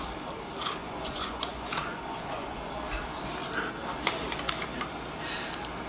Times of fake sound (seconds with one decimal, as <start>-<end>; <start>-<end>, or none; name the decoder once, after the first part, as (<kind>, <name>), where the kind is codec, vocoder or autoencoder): 0.8-2.7 (vocoder, Vocos)

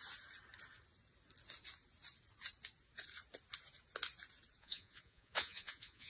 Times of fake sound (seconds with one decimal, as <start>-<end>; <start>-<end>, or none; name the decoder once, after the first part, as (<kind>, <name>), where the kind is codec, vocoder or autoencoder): 4.6-6.1 (vocoder, Vocos)